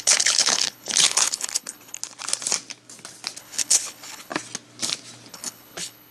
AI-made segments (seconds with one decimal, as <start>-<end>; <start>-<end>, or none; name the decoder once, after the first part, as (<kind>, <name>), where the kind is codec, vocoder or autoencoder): 0.0-2.0 (codec, HILCodec); 3.4-4.3; 5.3-6.1